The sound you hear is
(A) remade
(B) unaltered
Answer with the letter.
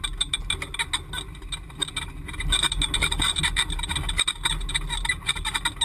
B